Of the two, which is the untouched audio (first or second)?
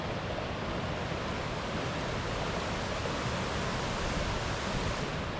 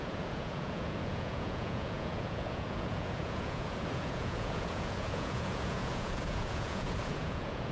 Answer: first